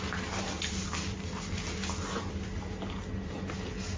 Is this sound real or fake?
real